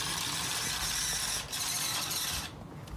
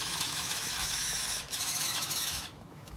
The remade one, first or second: second